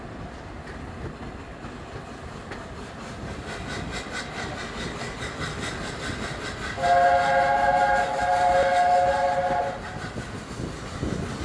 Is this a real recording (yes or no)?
yes